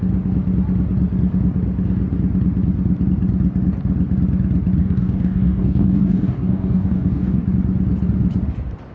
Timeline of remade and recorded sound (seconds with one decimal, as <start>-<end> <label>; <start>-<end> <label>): 0.0-4.8 recorded; 4.8-7.4 remade; 7.4-8.9 recorded